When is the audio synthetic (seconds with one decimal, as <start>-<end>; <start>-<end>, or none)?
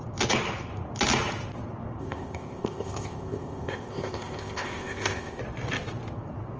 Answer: 2.0-5.4